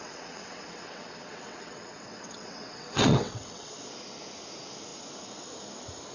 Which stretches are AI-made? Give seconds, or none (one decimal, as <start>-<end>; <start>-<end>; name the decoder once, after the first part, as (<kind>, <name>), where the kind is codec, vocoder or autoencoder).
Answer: 0.0-3.7 (vocoder, WaveNeXt)